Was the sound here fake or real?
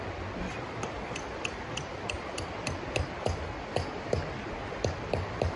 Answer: real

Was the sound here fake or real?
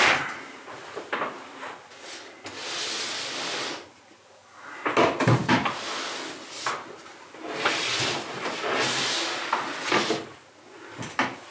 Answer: real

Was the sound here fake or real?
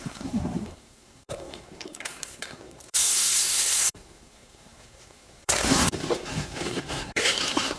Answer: fake